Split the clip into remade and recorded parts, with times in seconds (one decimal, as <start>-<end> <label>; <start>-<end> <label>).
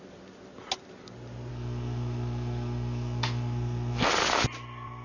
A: 0.0-1.5 recorded; 1.5-4.1 remade; 4.1-5.0 recorded